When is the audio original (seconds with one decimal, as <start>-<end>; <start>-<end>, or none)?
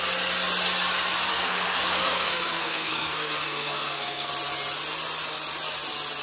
0.0-1.3; 4.3-6.2